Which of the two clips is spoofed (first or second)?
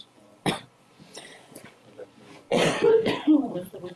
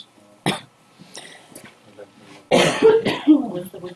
first